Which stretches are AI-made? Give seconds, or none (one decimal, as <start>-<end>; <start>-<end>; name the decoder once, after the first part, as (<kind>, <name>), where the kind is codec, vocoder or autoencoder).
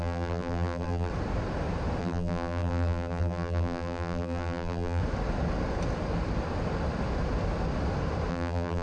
0.0-1.1 (vocoder, BigVGAN v2); 2.0-5.0; 8.3-8.8